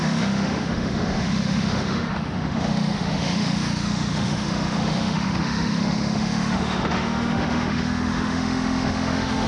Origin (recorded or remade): remade